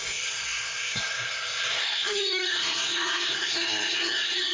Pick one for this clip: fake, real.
fake